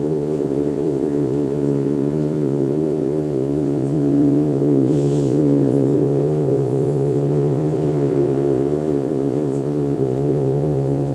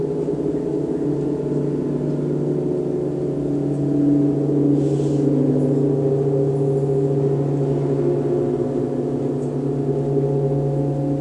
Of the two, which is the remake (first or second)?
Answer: first